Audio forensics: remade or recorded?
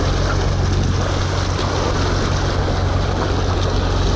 recorded